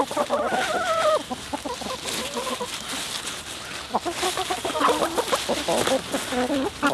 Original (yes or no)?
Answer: yes